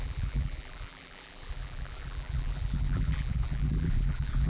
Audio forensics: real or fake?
fake